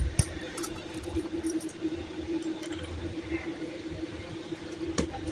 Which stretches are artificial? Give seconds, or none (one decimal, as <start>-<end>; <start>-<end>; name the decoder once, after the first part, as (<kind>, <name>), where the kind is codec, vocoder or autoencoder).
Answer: 0.0-2.0 (vocoder, BigVGAN v2); 2.7-5.3